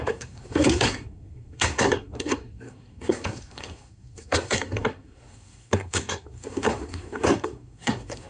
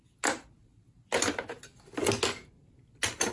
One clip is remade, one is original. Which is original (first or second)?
second